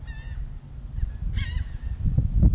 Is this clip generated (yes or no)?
no